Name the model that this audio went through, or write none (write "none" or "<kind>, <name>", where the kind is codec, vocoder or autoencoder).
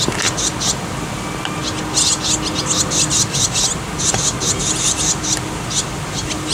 none